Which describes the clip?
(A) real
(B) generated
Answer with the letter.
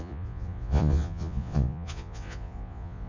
B